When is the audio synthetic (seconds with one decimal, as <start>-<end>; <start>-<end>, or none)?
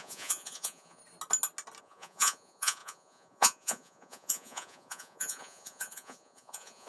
0.0-1.0; 1.8-6.9